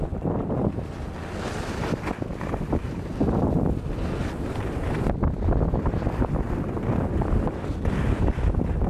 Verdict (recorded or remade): recorded